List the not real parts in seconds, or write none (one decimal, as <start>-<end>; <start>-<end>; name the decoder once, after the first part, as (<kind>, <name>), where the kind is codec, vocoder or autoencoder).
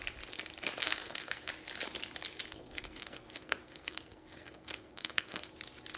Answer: 0.8-1.5 (codec, SNAC); 2.5-5.5